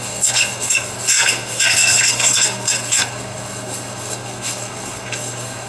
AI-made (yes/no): yes